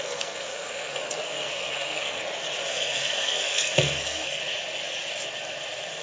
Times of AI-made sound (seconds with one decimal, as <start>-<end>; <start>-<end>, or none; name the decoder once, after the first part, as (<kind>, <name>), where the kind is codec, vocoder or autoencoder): 0.0-2.2 (codec, SNAC); 2.7-4.4